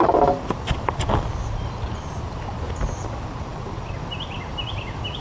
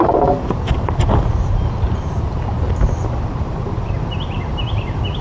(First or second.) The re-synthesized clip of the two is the second